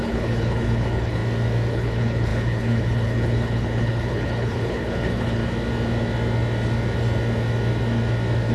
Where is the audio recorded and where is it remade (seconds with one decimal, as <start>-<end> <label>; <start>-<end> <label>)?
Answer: 0.0-1.2 remade; 1.2-1.7 recorded; 1.7-5.4 remade; 5.4-8.5 recorded